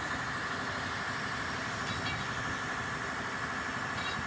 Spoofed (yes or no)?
no